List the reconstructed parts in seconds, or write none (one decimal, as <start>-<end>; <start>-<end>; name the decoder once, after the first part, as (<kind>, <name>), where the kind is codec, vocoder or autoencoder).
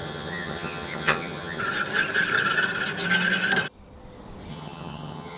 0.0-1.6 (vocoder, HiFi-GAN); 4.5-5.4